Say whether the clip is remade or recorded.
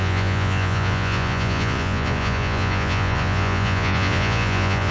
remade